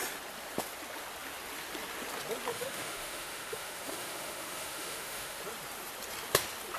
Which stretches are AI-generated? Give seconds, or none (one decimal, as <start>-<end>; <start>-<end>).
2.5-5.4